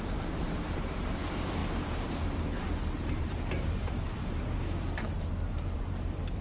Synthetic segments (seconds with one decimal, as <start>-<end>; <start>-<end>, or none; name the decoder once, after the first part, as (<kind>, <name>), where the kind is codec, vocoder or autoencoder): 0.0-6.4 (vocoder, BigVGAN v2)